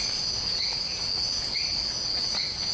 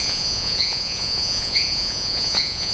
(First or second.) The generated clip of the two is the second